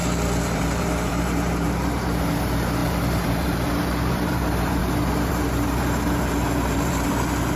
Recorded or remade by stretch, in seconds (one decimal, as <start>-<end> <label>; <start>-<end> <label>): 0.0-7.6 remade